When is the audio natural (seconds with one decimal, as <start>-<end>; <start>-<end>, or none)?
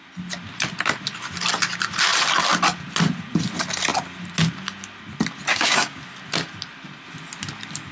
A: 0.0-5.5; 6.0-7.9